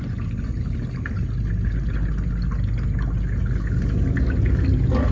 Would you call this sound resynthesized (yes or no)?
no